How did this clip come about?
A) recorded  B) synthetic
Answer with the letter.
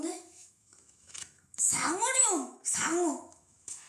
B